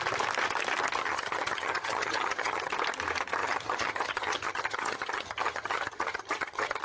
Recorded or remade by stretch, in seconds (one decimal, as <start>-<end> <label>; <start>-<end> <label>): 0.0-1.0 recorded; 1.0-2.7 remade; 2.7-3.4 recorded; 3.4-6.8 remade